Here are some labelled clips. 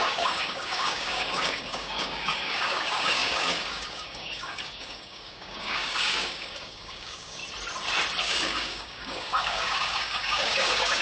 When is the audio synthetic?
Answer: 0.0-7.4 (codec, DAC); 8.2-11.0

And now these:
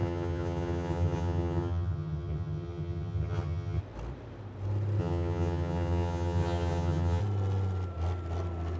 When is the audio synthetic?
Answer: 0.0-3.8 (vocoder, HiFi-GAN); 5.0-7.2

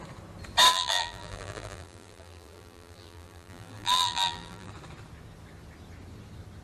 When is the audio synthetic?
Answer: 0.7-4.7 (vocoder, BigVGAN v2)

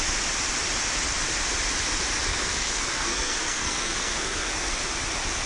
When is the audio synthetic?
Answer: 2.3-4.7 (codec, SNAC)

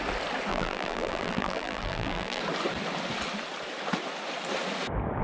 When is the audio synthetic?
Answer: 0.5-2.4 (vocoder, BigVGAN v2)